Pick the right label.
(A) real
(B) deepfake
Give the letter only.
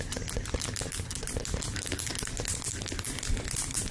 A